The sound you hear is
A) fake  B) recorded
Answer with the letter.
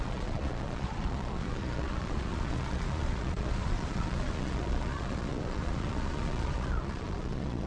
A